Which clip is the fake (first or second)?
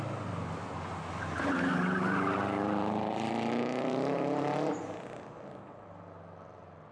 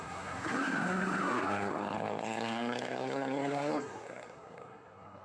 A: second